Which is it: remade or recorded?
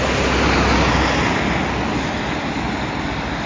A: recorded